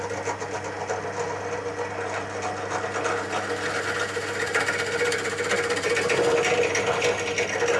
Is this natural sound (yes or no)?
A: yes